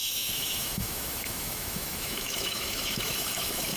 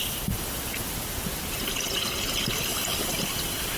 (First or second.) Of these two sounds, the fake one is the first